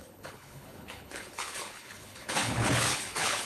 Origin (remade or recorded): remade